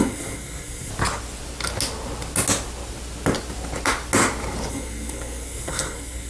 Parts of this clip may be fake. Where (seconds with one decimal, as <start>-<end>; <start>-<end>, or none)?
0.0-0.9; 4.7-6.3